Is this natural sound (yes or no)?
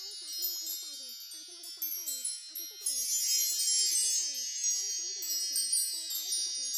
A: yes